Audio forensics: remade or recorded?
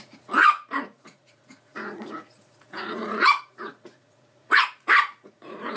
remade